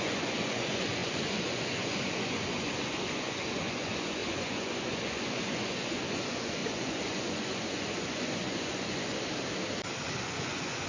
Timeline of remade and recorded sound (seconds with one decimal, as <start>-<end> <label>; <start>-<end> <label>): 0.0-9.1 remade; 9.1-10.2 recorded; 10.2-10.9 remade